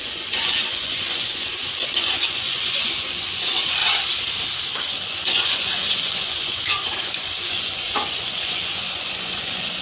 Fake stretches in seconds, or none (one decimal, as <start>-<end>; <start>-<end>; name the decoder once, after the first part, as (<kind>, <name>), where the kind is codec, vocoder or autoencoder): 0.0-3.8 (vocoder, Vocos); 5.0-9.8